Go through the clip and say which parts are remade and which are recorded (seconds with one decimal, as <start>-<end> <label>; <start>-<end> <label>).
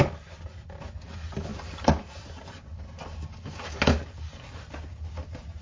0.0-1.5 recorded; 1.5-2.0 remade; 2.0-5.6 recorded